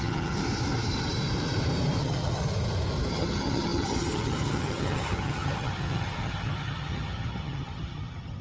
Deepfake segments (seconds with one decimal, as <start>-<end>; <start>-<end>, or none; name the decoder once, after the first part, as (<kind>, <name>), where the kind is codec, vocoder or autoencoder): 0.0-0.4 (vocoder, HiFi-GAN); 2.0-2.4; 3.1-8.4